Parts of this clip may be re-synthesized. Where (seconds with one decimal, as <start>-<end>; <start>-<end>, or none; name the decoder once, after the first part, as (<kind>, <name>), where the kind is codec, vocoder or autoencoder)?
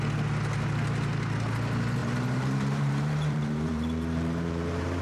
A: 2.0-5.0 (vocoder, BigVGAN v2)